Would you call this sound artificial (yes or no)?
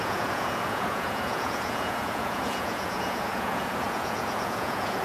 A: yes